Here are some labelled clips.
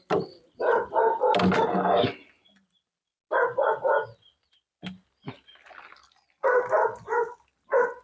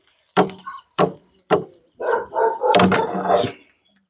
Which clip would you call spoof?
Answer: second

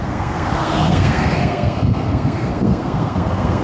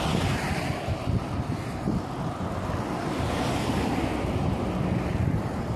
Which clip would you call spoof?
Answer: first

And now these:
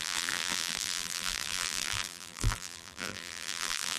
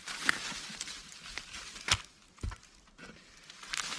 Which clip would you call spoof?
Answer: first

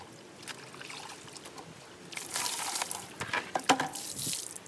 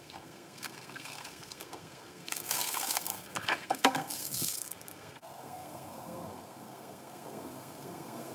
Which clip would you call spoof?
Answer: second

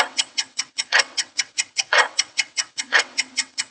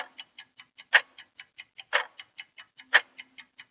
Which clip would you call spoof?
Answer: first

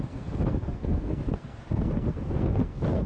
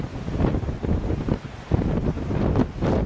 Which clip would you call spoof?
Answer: first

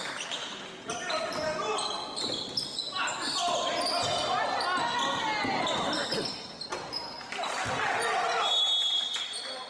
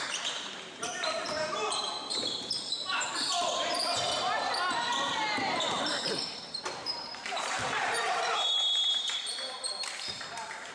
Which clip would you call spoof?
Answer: second